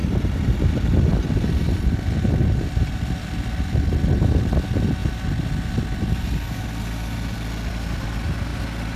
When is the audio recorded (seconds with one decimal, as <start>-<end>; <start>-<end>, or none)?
3.8-9.0